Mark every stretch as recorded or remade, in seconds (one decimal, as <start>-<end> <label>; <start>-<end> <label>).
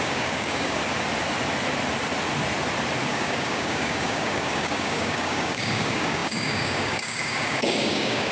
0.0-0.8 remade; 0.8-3.1 recorded; 3.1-8.3 remade